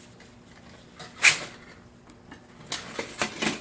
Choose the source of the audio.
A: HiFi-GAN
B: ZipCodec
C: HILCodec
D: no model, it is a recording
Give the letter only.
D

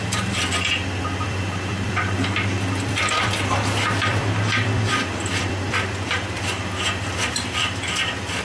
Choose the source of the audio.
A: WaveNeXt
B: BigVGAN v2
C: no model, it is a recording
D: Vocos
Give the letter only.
B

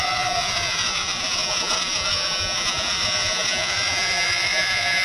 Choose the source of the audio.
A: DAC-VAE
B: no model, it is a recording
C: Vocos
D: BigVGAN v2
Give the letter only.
C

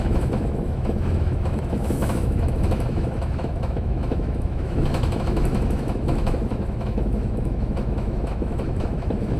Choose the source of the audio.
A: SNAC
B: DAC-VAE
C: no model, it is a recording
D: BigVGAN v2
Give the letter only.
B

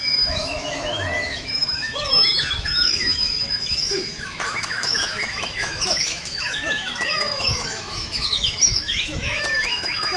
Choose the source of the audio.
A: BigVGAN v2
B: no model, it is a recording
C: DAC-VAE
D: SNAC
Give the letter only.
C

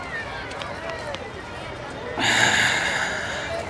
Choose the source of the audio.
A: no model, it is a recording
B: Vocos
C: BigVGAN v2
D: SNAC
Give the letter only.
A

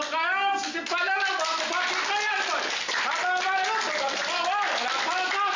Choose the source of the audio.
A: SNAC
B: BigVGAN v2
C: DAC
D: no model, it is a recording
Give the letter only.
D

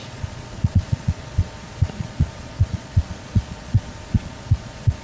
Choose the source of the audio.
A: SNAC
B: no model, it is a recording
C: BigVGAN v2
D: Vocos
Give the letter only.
D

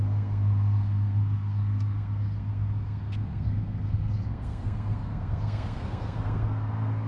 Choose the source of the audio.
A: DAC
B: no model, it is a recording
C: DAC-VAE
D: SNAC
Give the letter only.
D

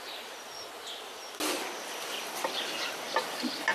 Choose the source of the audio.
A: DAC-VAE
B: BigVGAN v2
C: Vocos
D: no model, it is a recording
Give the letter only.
D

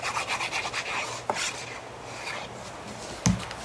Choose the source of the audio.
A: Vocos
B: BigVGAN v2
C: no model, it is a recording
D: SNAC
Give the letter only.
C